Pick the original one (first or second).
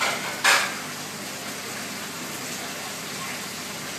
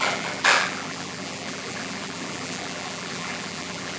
first